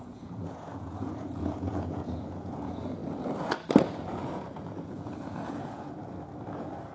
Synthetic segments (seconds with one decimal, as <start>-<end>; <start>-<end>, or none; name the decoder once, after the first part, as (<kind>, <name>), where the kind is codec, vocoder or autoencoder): 0.0-3.0 (vocoder, Vocos); 3.8-6.0